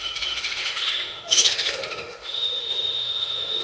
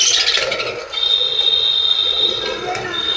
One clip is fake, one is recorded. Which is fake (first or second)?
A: first